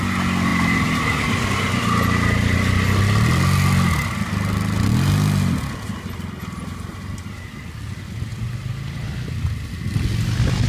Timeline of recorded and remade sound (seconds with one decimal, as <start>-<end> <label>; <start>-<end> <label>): 0.0-10.7 recorded